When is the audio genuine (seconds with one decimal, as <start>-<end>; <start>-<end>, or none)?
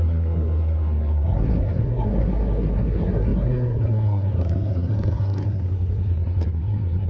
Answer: none